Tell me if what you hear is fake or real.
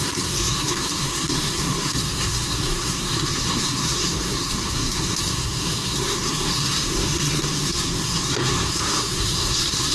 fake